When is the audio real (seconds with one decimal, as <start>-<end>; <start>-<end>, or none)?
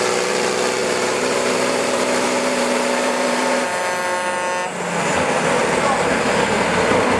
0.0-0.8; 3.8-7.2